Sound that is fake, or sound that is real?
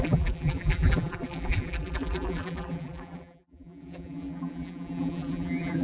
fake